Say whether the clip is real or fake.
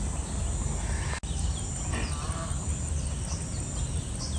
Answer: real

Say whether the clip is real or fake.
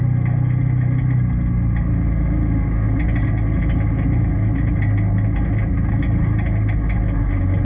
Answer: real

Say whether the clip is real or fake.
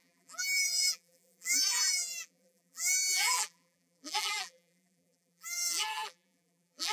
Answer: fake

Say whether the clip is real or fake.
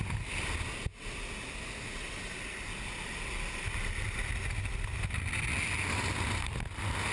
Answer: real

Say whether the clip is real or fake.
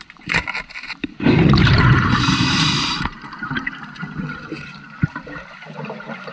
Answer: fake